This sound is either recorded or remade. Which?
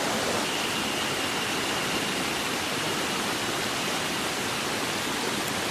remade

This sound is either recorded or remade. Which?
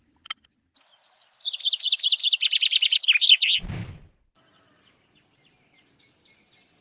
recorded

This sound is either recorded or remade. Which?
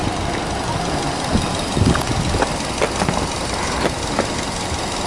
recorded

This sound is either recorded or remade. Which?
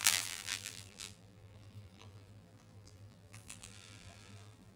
remade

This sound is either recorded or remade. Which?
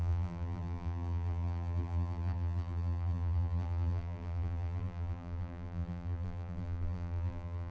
remade